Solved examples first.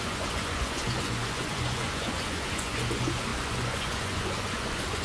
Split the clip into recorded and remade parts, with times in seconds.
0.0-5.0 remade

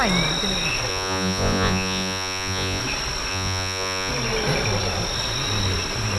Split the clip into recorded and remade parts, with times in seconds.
0.0-0.9 recorded; 0.9-2.8 remade; 2.8-3.3 recorded; 3.3-4.1 remade; 4.1-6.2 recorded

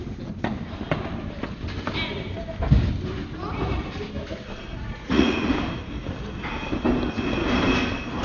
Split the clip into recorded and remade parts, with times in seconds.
0.0-4.5 recorded; 4.5-5.5 remade; 5.5-8.2 recorded

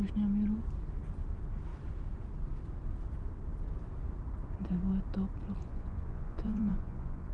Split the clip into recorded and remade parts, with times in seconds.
0.0-5.6 recorded; 5.6-7.3 remade

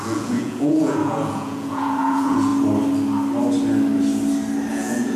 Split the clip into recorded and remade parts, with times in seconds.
0.0-2.5 remade; 2.5-4.7 recorded; 4.7-5.2 remade

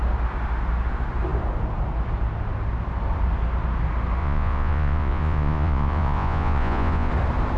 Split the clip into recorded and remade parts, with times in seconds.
0.0-4.2 recorded; 4.2-7.1 remade; 7.1-7.6 recorded

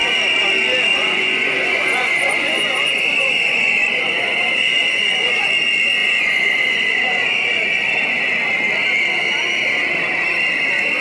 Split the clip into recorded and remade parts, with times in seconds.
0.0-0.9 recorded; 0.9-5.5 remade; 5.5-6.0 recorded; 6.0-8.2 remade; 8.2-11.0 recorded